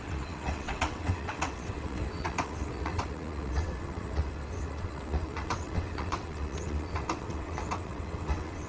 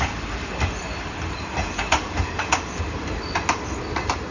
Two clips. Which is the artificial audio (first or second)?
first